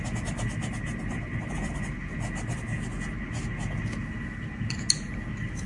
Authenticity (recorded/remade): recorded